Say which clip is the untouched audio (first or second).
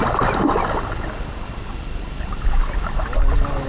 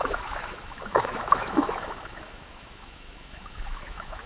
first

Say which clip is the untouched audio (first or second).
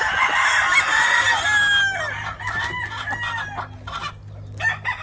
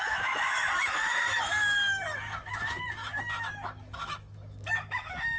first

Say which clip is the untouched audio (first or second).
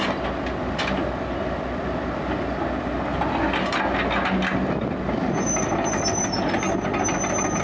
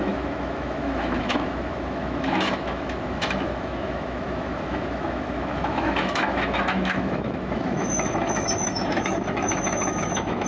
first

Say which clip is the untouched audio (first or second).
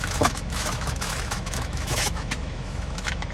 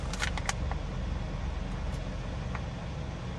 second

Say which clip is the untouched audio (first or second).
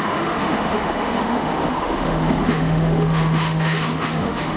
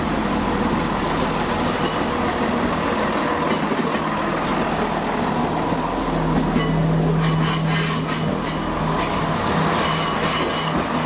second